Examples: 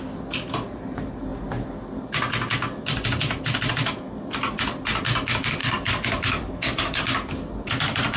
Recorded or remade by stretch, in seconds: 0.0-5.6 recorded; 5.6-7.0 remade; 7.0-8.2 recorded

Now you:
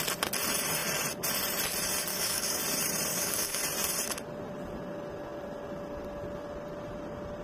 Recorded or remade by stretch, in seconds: 0.0-2.1 recorded; 2.1-2.6 remade; 2.6-3.1 recorded; 3.1-3.6 remade; 3.6-7.4 recorded

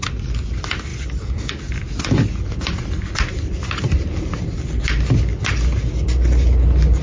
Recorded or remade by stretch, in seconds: 0.0-7.0 recorded

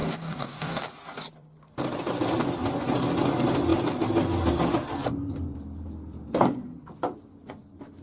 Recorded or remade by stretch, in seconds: 0.0-0.8 remade; 0.8-8.0 recorded

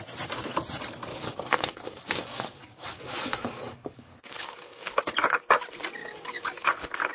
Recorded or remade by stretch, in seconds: 0.0-1.1 recorded; 1.1-5.4 remade; 5.4-6.0 recorded; 6.0-7.1 remade